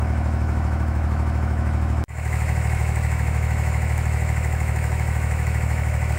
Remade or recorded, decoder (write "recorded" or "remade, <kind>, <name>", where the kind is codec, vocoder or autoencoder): remade, autoencoder, DAC-VAE